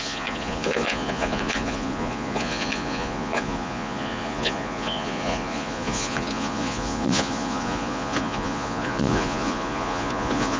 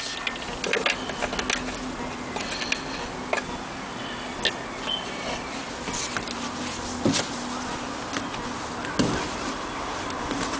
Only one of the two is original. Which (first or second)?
second